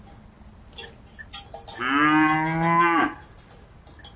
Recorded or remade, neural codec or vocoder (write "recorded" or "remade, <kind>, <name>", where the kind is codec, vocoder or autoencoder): recorded